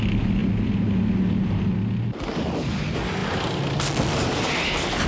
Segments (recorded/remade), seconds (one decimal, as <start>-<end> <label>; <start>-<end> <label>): 0.0-5.1 recorded